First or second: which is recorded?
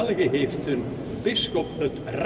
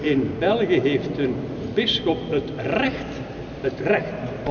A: second